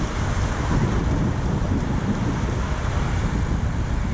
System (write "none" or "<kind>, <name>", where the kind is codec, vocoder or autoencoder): none